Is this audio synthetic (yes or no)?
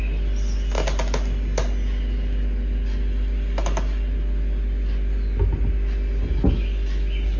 no